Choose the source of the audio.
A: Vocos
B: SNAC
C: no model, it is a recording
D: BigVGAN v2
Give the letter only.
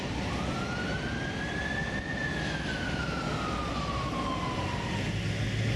C